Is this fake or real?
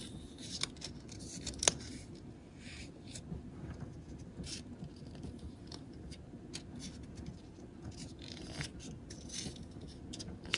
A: real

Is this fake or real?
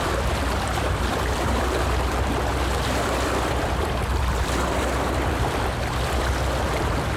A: fake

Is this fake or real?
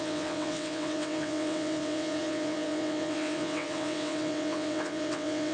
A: fake